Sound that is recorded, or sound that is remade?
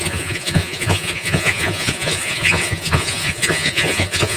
remade